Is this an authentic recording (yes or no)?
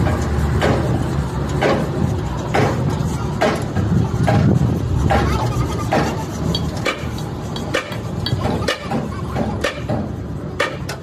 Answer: yes